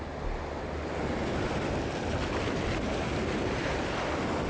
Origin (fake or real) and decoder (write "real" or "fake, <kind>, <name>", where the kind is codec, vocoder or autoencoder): real